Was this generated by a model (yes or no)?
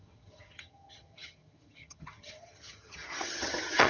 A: yes